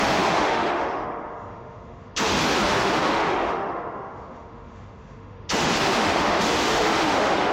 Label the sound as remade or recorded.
remade